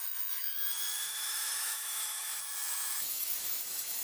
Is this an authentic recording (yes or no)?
no